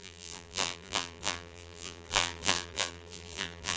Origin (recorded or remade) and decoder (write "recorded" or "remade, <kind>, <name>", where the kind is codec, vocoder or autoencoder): remade, vocoder, BigVGAN v2